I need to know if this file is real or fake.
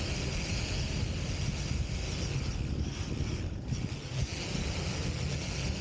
real